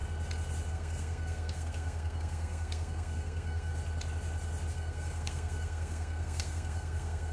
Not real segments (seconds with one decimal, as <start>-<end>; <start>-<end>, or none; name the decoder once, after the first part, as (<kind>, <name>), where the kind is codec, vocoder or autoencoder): 0.7-3.7 (codec, SNAC); 4.7-7.3